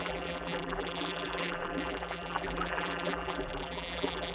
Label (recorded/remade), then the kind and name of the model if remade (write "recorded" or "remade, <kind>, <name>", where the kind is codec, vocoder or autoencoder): remade, vocoder, BigVGAN v2